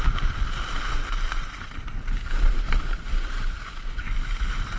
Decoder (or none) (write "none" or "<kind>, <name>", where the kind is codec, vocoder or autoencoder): none